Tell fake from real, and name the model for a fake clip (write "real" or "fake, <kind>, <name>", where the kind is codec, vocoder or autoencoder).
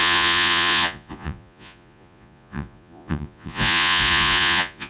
fake, vocoder, Vocos